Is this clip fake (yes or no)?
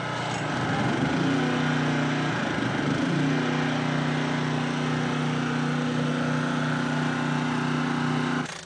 no